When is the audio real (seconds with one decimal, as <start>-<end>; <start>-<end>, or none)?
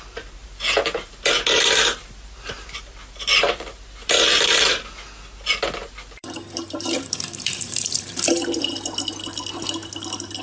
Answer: 0.0-0.4; 4.8-5.8; 8.7-10.4